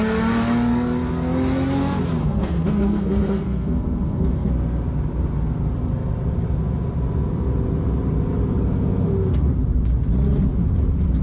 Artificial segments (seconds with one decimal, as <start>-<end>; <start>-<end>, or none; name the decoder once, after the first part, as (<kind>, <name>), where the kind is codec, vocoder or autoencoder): 2.2-4.5 (codec, SNAC)